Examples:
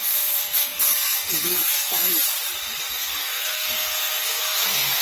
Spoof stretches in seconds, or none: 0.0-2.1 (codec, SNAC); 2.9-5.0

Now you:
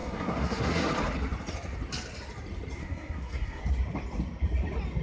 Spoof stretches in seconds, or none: 0.0-0.9 (codec, SNAC); 2.8-3.6

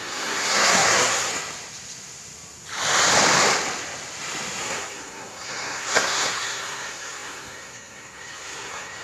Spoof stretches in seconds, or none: 0.0-1.3 (codec, SNAC); 4.6-9.0

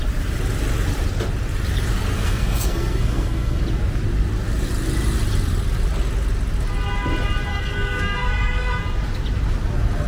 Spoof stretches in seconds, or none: 2.1-3.6 (codec, SNAC); 7.5-8.8